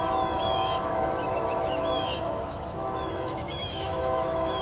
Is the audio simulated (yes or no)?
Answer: yes